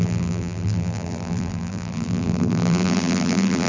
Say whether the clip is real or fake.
fake